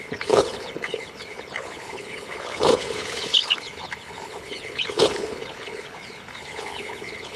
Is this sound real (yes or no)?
no